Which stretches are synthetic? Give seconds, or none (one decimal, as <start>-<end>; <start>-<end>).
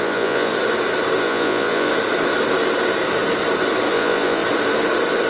0.0-0.5; 1.2-1.9; 3.9-4.4